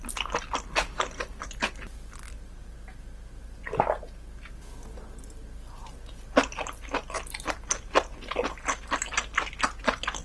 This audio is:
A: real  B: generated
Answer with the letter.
A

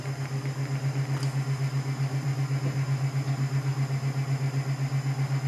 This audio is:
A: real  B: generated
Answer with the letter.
A